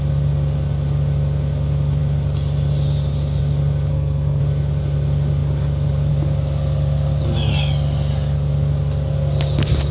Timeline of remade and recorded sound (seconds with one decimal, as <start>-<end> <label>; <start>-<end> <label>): 0.0-3.9 recorded; 3.9-4.4 remade; 4.4-9.9 recorded